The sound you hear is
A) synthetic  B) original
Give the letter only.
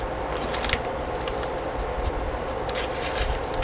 B